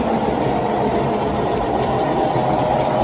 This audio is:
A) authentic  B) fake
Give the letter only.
A